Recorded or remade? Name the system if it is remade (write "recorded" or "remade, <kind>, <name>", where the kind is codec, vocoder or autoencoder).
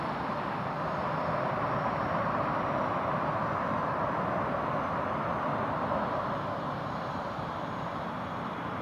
recorded